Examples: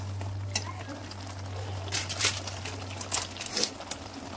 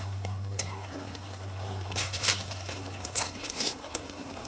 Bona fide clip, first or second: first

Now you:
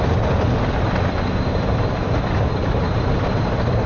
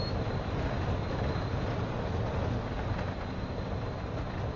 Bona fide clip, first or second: second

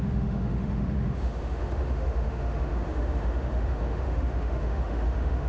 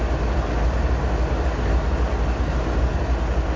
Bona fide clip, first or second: second